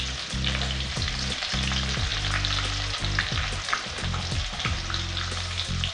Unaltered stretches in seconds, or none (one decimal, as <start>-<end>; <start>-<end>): 0.0-5.9